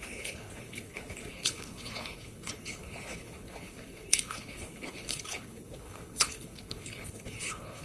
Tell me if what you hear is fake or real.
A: fake